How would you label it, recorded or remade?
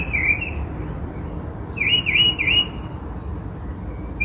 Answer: recorded